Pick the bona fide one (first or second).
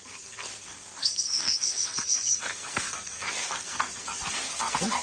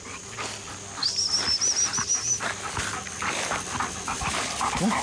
second